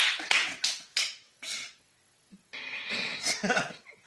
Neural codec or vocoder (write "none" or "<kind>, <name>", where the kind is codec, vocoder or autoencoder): vocoder, WaveNeXt